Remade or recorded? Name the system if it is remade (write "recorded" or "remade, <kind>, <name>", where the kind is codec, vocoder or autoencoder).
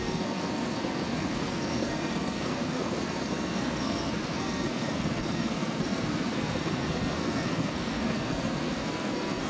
remade, codec, SNAC